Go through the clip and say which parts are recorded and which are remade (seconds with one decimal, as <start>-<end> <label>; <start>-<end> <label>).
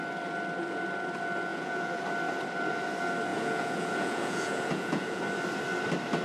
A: 0.0-1.5 recorded; 1.5-2.0 remade; 2.0-3.3 recorded; 3.3-5.2 remade; 5.2-6.2 recorded